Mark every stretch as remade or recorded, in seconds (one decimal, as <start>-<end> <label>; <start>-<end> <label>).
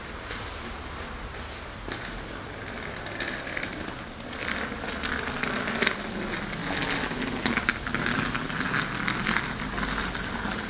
0.0-10.7 recorded